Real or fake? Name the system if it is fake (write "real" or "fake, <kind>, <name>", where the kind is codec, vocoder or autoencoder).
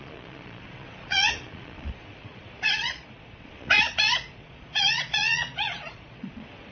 fake, vocoder, Vocos